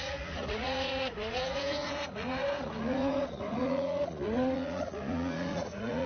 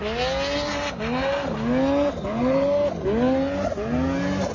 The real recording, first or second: second